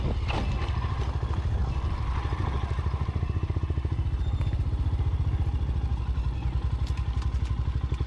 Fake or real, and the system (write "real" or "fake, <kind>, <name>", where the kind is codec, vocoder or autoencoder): real